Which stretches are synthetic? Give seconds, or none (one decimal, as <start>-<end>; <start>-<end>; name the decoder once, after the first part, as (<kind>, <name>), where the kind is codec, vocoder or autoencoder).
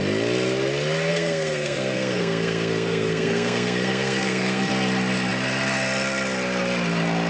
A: 1.1-4.7 (codec, SNAC)